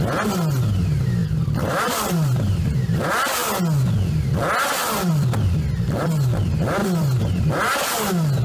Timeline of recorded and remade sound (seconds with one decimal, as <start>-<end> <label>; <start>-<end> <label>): 0.0-1.2 recorded; 1.2-3.0 remade; 3.0-6.8 recorded; 6.8-7.5 remade; 7.5-8.4 recorded